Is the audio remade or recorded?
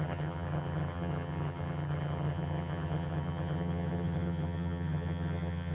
remade